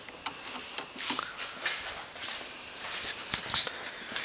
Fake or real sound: real